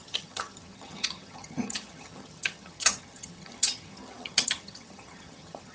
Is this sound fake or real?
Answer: fake